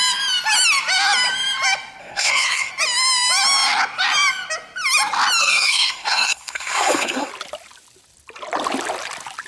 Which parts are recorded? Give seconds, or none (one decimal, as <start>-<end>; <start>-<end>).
0.0-2.0; 2.7-5.4; 7.3-9.5